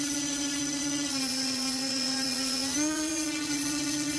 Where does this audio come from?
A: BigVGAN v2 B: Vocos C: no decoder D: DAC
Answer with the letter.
B